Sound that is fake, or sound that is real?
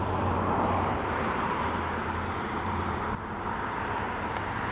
fake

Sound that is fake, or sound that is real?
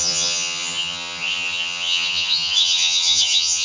fake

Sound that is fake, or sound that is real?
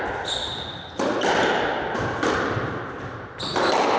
real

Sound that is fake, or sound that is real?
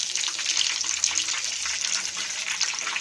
real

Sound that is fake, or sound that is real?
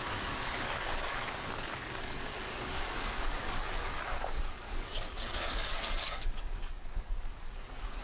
fake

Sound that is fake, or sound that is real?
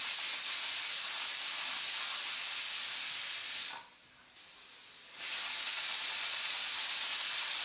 real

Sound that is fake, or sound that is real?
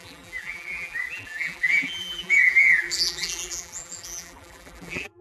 fake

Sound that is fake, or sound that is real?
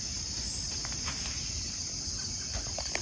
real